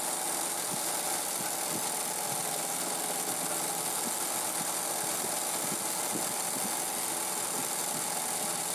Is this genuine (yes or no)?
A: yes